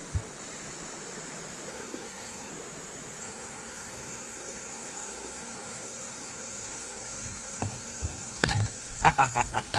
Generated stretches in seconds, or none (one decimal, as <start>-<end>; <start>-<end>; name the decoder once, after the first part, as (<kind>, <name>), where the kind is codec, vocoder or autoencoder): 1.7-2.5 (codec, SNAC); 3.2-9.8